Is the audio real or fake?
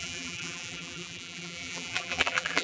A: fake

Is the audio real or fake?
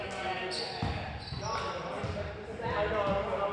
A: real